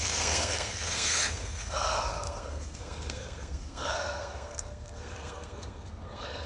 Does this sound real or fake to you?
fake